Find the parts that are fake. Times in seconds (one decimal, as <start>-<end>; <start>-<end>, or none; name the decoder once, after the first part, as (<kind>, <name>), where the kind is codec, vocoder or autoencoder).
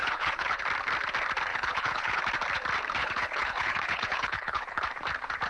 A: 0.0-0.6 (codec, HILCodec); 1.5-2.2; 3.0-4.8